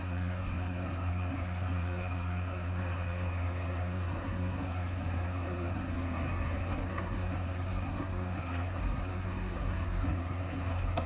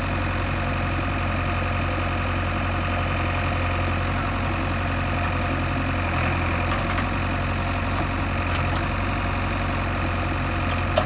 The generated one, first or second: first